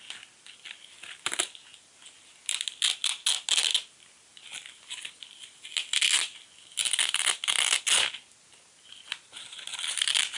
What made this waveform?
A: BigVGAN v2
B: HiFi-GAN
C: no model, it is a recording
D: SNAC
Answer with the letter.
C